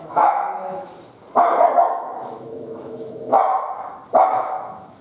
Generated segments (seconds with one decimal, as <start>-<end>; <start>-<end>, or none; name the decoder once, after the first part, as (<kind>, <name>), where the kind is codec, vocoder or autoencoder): 0.0-0.9 (autoencoder, DAC-VAE); 1.8-3.3; 4.3-5.0